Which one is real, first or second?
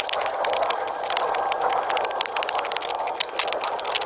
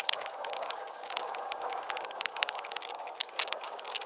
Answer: first